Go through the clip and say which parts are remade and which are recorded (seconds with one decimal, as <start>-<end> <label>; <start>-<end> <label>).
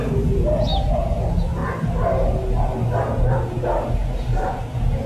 0.0-0.7 recorded; 0.7-1.2 remade; 1.2-1.6 recorded; 1.6-5.1 remade